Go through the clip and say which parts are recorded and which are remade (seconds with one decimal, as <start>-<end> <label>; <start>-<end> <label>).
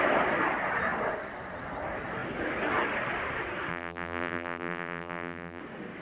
0.0-3.7 recorded; 3.7-5.6 remade; 5.6-6.0 recorded